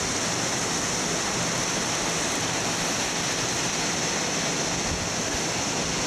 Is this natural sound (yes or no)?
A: yes